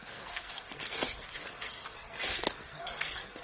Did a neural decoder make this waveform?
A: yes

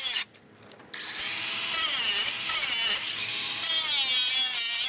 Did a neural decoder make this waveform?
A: no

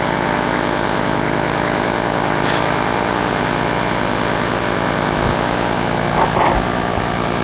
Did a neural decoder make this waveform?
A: no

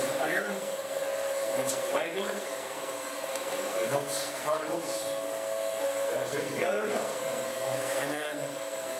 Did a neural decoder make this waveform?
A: yes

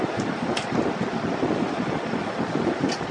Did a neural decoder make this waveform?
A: no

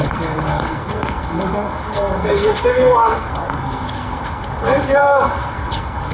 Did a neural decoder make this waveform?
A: yes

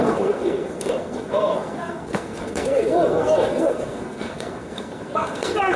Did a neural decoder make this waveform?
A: yes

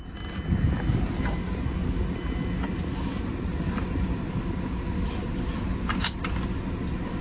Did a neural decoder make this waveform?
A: no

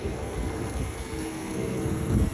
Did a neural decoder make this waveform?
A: yes